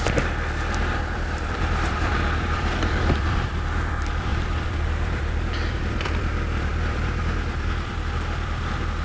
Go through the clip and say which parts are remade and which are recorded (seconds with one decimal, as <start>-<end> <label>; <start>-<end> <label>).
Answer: 0.0-9.0 remade